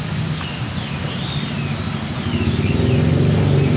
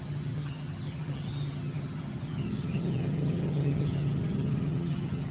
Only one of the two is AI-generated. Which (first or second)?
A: second